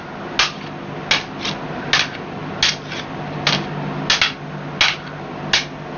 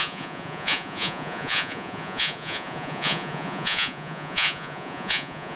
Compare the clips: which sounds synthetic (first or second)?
second